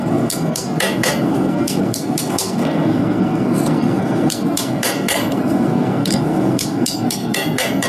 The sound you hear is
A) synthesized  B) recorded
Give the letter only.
A